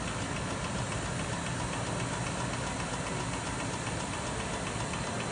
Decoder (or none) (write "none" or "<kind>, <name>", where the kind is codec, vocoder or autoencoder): none